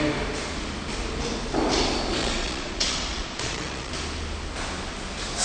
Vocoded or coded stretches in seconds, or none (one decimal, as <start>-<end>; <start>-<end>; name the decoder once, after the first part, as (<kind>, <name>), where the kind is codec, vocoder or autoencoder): 2.2-3.9 (vocoder, Vocos)